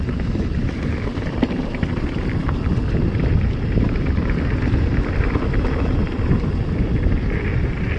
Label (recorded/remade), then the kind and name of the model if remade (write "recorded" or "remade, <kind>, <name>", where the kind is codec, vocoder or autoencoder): remade, vocoder, BigVGAN v2